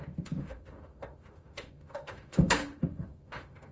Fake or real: fake